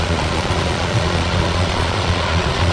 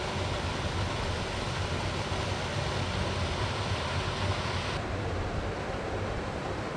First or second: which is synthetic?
first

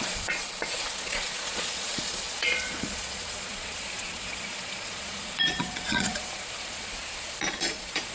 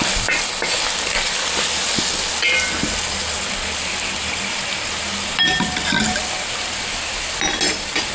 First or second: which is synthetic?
first